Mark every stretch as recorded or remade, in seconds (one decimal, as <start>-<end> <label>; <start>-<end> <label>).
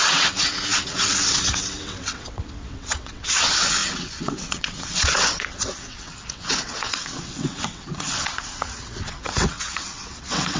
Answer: 0.0-10.6 remade